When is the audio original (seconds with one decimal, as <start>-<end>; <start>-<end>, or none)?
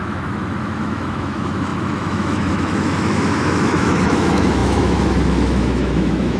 none